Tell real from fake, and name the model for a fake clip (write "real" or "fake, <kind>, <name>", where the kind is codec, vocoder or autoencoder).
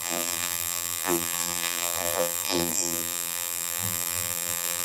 fake, vocoder, BigVGAN v2